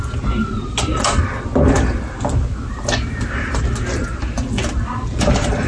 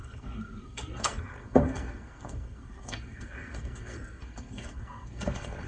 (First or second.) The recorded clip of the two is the first